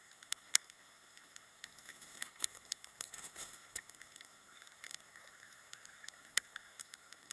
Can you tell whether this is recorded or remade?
remade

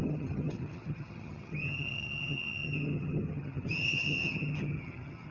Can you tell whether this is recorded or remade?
remade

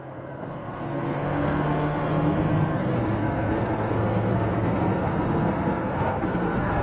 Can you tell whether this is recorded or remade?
remade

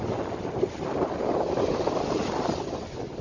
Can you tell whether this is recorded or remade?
recorded